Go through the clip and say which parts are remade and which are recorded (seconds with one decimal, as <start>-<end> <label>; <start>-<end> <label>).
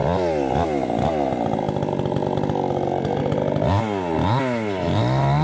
0.0-5.4 recorded